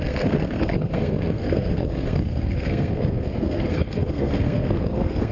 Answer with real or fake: fake